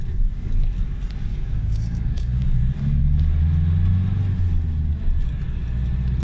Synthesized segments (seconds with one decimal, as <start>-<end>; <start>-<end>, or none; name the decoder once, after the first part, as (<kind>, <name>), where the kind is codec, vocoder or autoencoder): 1.3-2.6 (codec, DAC)